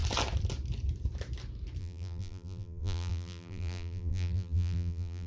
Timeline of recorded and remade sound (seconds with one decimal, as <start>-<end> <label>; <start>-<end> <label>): 0.0-1.8 recorded; 1.8-5.3 remade